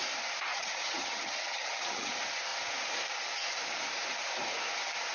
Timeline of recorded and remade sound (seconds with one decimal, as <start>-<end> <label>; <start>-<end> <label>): 0.0-0.5 recorded; 0.5-2.1 remade; 2.1-5.1 recorded